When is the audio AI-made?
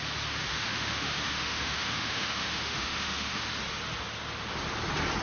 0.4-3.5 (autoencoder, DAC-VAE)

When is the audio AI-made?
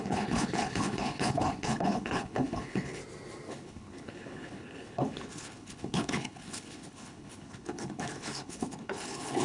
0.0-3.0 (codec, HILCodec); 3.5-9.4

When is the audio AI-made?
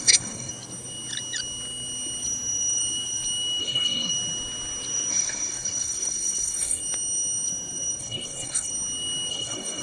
0.0-0.5 (codec, SNAC); 3.6-4.1; 5.1-6.8; 8.0-8.7; 9.3-9.8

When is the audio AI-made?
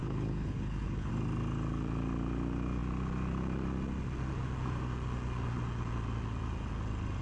0.0-1.1 (codec, HILCodec)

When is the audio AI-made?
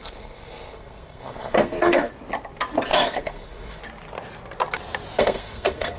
0.0-2.1 (codec, SNAC); 2.9-3.8; 5.2-6.0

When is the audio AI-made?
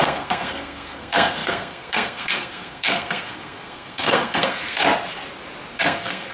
0.0-4.8 (codec, SNAC); 5.7-6.3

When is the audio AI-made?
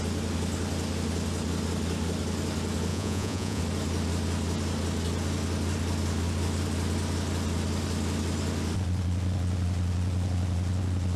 2.9-3.6 (vocoder, Vocos)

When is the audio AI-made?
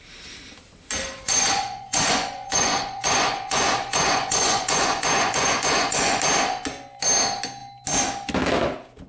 1.0-6.2 (vocoder, Vocos)